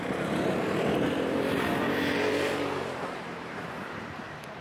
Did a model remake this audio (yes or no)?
yes